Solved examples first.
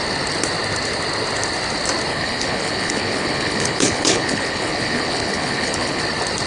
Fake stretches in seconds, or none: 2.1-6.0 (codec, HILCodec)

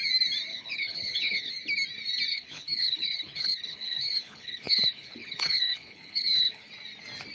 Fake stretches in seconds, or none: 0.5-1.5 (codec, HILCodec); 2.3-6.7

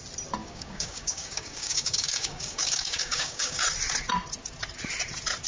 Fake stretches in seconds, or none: 0.4-3.6 (codec, DAC)